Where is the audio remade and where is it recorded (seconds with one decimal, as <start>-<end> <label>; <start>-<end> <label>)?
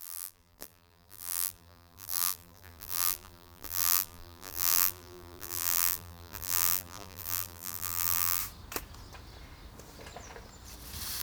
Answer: 0.0-8.4 remade; 8.4-11.2 recorded